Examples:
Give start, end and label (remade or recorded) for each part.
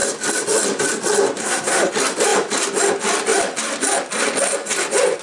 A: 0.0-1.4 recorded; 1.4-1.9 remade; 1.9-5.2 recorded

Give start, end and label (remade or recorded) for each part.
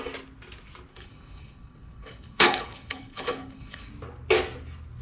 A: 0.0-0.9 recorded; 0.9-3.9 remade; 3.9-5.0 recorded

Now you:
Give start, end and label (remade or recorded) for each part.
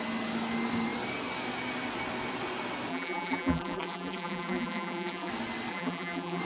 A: 0.0-2.9 recorded; 2.9-5.3 remade; 5.3-5.7 recorded; 5.7-6.4 remade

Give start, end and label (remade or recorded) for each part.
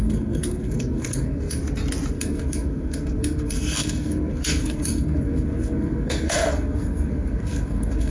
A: 0.0-1.6 remade; 1.6-2.1 recorded; 2.1-8.1 remade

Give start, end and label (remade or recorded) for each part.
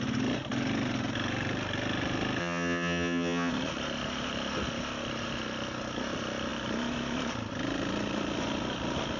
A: 0.0-2.4 recorded; 2.4-3.5 remade; 3.5-9.2 recorded